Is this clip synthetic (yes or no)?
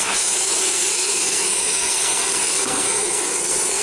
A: yes